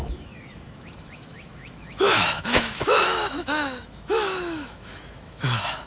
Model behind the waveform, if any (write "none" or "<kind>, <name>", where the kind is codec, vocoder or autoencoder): autoencoder, DAC-VAE